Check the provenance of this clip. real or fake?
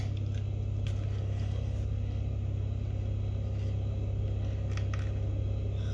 real